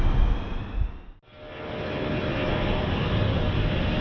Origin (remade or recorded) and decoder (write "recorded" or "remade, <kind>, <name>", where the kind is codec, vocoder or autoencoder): recorded